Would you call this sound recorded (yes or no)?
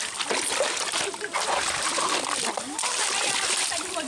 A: yes